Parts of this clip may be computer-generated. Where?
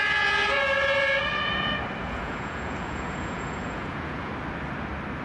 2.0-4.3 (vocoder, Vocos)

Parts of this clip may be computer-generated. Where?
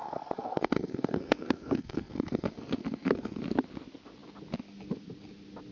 0.0-3.4 (codec, SNAC)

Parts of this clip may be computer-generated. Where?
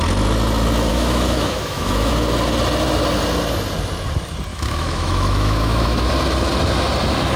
0.9-2.1 (autoencoder, DAC-VAE); 4.5-6.1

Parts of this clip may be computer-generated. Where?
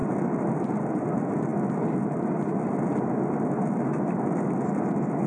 none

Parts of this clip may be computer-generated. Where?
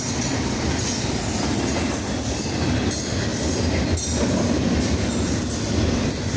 none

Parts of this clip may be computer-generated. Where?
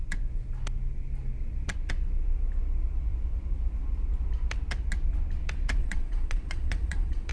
5.8-7.3 (vocoder, Vocos)